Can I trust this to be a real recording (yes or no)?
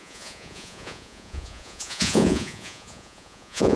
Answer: no